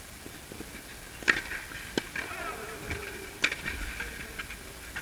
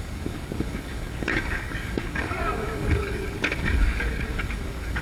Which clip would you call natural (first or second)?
first